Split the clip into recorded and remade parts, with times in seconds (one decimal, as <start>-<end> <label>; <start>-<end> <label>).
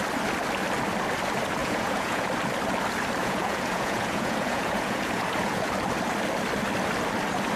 0.0-1.6 recorded; 1.6-2.3 remade; 2.3-3.2 recorded; 3.2-5.7 remade; 5.7-7.6 recorded